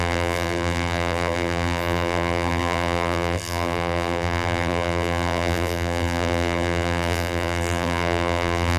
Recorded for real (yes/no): no